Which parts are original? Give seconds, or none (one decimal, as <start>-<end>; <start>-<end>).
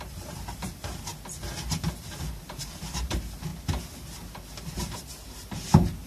1.1-2.3; 3.5-4.8